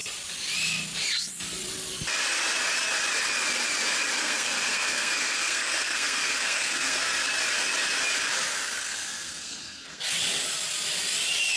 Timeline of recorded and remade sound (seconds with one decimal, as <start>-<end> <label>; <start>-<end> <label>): 0.0-4.2 recorded; 4.2-7.0 remade; 7.0-8.5 recorded; 8.5-10.0 remade; 10.0-11.6 recorded